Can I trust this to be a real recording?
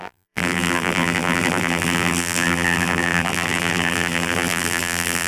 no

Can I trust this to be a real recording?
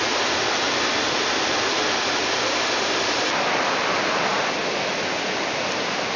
yes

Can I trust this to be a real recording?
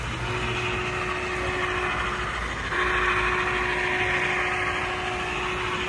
yes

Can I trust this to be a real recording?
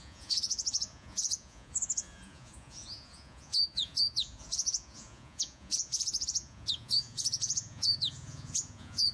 no